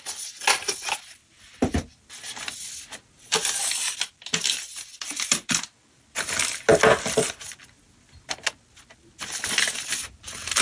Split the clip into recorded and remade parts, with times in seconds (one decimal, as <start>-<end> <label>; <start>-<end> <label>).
0.0-10.6 recorded